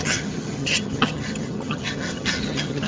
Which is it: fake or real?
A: fake